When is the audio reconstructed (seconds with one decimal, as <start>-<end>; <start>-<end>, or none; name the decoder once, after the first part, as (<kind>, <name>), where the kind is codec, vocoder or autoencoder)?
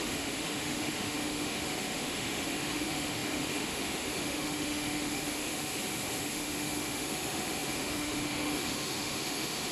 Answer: 0.0-5.7 (autoencoder, DAC-VAE); 6.2-9.7